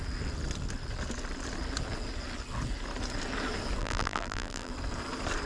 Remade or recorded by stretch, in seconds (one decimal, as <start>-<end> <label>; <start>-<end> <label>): 0.0-3.8 recorded; 3.8-4.7 remade; 4.7-5.5 recorded